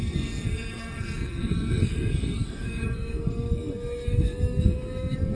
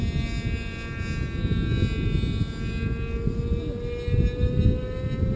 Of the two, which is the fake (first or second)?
first